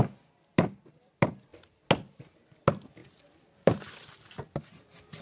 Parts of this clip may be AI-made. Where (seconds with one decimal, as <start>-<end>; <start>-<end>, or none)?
none